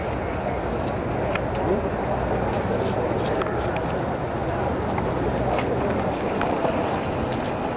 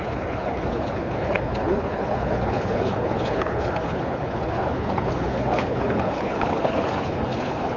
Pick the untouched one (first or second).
first